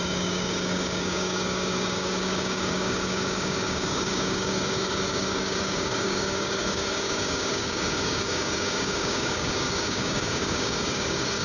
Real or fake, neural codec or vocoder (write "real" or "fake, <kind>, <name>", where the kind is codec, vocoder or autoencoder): fake, codec, DAC